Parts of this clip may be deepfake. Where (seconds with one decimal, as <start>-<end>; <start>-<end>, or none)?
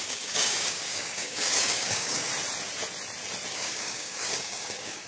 0.0-2.3; 3.5-5.1